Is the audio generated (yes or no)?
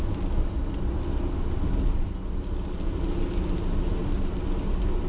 no